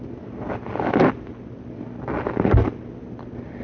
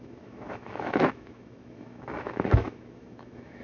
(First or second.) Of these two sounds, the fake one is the second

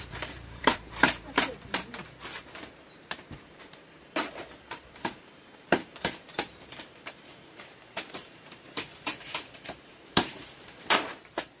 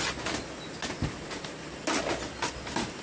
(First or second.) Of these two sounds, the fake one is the first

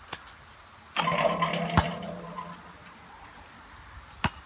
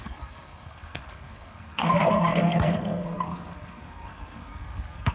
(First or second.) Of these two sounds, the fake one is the second